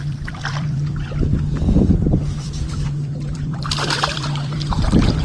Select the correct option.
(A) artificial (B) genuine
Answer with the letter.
A